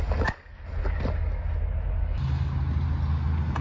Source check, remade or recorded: recorded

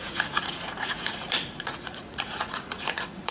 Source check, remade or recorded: remade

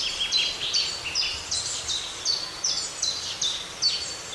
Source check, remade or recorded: recorded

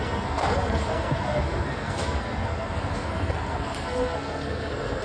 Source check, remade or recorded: remade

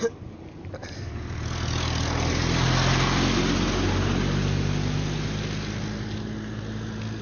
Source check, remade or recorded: recorded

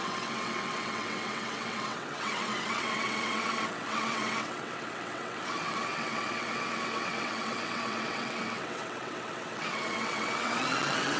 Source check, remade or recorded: remade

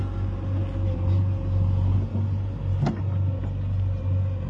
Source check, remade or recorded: recorded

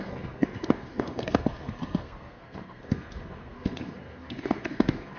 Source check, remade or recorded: remade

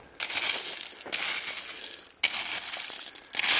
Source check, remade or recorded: recorded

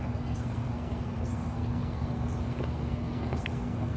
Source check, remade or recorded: remade